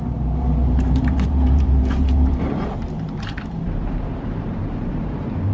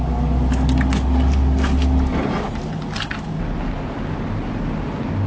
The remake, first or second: first